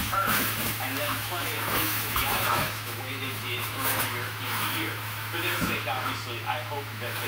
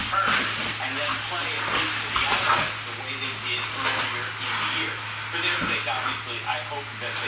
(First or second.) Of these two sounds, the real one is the second